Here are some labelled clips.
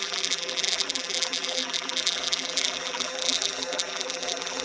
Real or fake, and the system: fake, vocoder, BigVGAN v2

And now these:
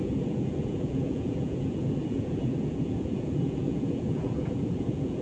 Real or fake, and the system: fake, vocoder, Vocos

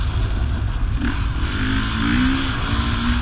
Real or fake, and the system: real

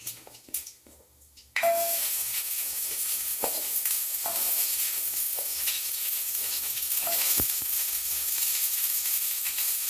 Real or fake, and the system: fake, autoencoder, DAC-VAE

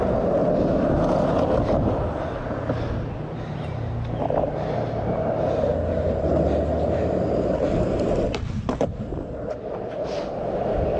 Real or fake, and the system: real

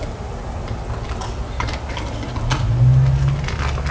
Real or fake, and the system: real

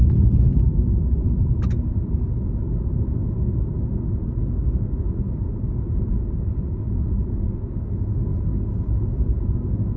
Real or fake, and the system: real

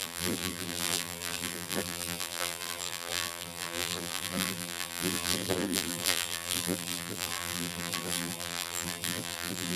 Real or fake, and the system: fake, vocoder, BigVGAN v2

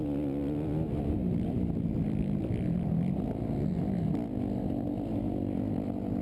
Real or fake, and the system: real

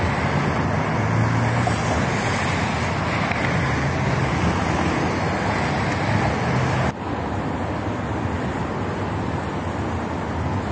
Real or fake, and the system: real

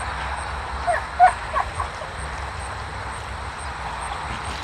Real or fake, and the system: real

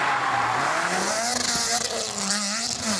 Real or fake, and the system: real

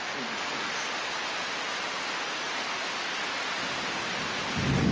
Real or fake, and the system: real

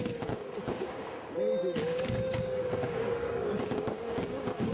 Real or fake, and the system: fake, codec, DAC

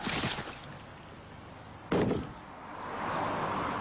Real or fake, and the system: real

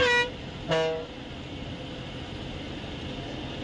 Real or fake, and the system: real